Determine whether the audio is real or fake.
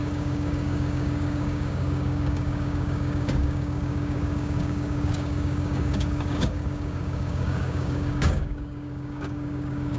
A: fake